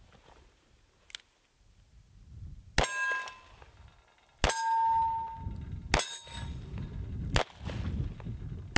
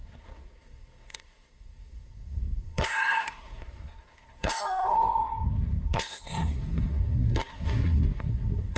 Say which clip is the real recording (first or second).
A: first